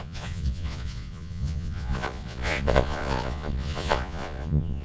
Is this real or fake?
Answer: fake